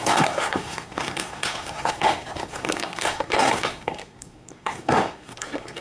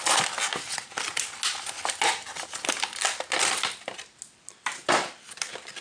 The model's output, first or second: first